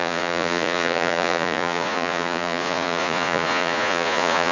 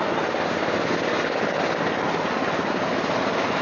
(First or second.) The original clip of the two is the second